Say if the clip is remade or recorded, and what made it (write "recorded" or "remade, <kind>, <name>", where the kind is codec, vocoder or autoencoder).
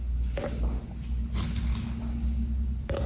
recorded